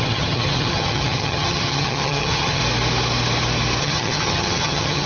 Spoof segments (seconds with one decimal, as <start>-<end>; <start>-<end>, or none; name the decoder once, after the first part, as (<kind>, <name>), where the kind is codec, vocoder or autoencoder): 0.0-2.6 (vocoder, HiFi-GAN); 3.8-5.1